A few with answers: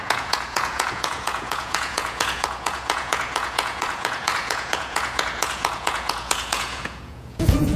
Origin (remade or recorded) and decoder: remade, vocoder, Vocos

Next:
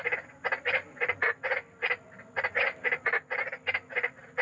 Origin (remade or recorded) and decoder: recorded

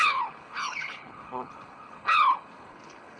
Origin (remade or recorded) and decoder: remade, codec, HILCodec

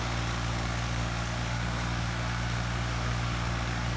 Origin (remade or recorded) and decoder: remade, codec, DAC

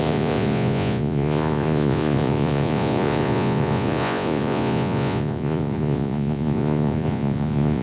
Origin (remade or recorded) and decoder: remade, vocoder, Vocos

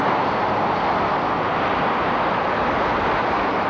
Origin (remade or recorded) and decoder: recorded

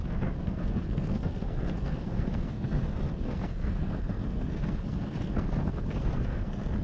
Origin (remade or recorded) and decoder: remade, codec, SNAC